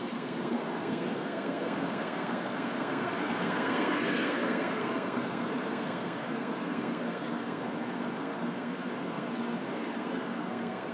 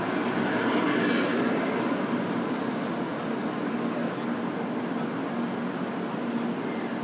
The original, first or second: second